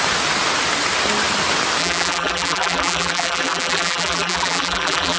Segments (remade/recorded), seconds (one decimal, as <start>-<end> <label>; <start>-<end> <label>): 0.0-1.8 recorded; 1.8-5.2 remade